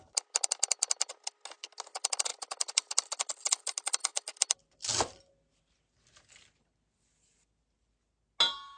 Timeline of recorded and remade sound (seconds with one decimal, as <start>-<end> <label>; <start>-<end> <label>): 0.0-8.8 recorded